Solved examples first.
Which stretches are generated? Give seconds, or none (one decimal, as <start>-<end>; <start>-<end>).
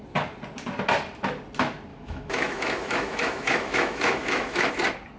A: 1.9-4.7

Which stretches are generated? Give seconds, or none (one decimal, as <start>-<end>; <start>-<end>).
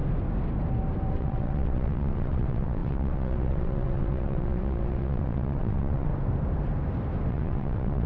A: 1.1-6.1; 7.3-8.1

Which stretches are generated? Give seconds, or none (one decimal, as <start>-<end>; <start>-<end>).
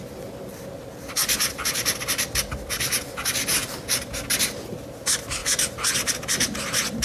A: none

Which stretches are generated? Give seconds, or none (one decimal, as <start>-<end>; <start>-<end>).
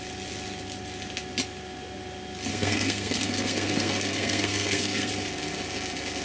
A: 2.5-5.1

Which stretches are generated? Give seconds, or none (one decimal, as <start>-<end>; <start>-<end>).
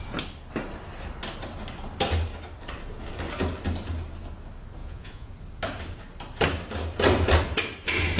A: 4.8-5.3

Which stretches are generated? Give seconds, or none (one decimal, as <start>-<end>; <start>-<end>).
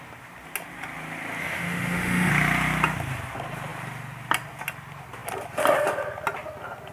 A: 1.4-2.3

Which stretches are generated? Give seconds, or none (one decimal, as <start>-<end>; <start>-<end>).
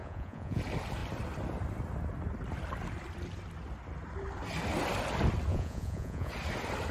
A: 0.0-0.6; 5.5-6.3